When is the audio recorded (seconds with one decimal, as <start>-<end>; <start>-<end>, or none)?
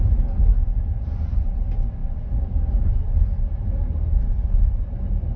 0.0-5.4